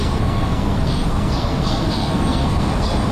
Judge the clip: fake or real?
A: fake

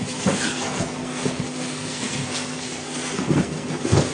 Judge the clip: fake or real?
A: fake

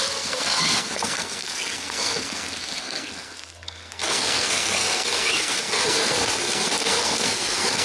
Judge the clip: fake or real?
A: fake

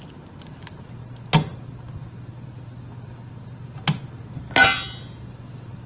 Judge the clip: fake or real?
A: real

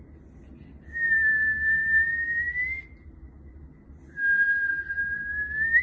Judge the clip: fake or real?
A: real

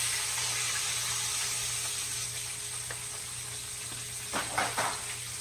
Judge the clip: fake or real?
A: real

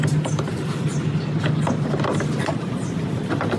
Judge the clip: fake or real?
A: real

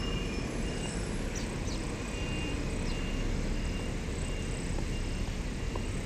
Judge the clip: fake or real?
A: real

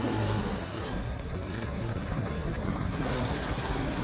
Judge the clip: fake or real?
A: fake